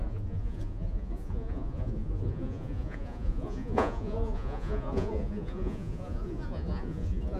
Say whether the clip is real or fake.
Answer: fake